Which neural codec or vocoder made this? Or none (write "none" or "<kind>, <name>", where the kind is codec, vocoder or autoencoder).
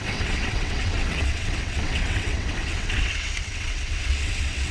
vocoder, WaveNeXt